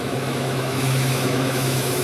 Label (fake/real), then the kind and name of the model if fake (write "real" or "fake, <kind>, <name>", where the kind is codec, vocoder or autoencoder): fake, autoencoder, DAC-VAE